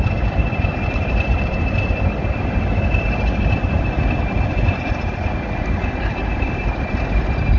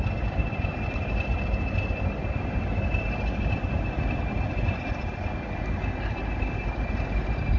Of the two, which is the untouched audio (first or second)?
second